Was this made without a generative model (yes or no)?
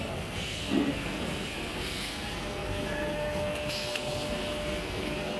no